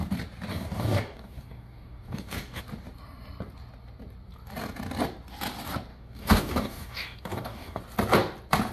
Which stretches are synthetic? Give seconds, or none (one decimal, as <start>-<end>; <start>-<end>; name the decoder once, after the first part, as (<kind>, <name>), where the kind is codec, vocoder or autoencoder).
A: 0.5-2.6 (codec, DAC); 5.9-7.8